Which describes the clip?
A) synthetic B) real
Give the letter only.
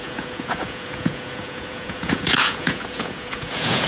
A